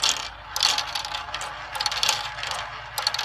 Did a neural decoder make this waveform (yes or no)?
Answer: no